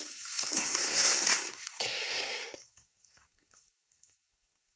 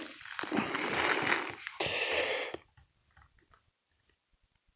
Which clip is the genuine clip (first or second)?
second